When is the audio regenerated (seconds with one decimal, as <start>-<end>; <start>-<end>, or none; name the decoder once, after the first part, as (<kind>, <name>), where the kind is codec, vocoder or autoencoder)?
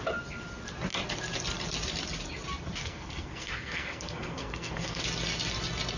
2.8-5.0 (codec, SNAC)